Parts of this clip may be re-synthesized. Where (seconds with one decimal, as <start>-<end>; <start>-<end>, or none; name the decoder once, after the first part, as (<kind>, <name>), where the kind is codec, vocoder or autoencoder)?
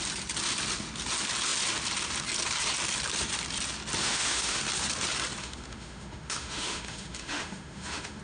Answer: 4.0-4.6 (autoencoder, DAC-VAE); 5.4-8.2